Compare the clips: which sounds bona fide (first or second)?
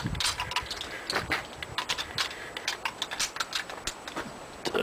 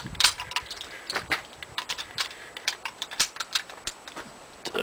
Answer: first